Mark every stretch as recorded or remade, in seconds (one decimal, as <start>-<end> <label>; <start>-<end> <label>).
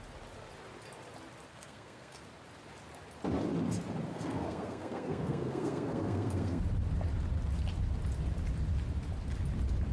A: 0.0-1.5 recorded; 1.5-2.2 remade; 2.2-4.1 recorded; 4.1-6.6 remade; 6.6-9.9 recorded